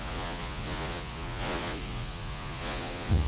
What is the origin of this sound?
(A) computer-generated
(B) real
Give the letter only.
A